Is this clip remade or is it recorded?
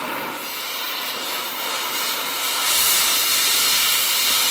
recorded